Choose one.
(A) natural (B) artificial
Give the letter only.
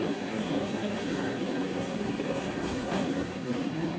B